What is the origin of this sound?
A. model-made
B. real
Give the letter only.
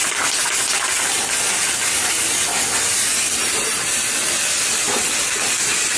B